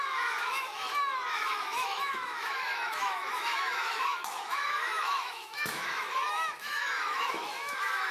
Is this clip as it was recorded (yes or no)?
no